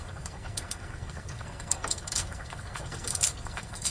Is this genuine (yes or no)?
no